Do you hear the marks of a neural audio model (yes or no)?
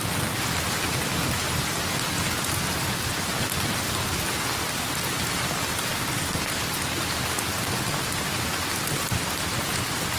no